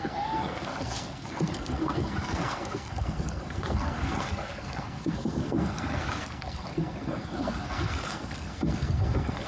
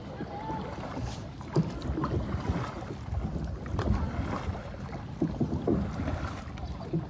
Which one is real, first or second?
second